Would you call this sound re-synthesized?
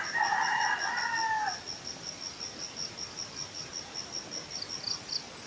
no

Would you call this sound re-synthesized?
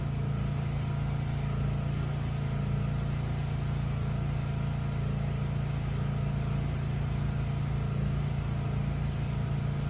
no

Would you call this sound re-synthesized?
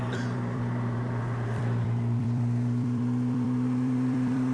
yes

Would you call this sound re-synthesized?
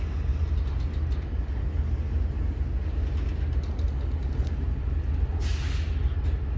no